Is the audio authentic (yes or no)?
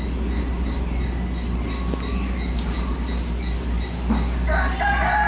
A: yes